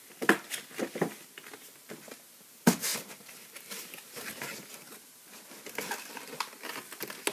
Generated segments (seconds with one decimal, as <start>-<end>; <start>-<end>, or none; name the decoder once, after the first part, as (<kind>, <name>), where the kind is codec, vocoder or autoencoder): none